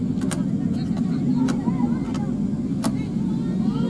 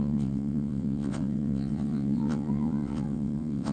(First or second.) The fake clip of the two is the second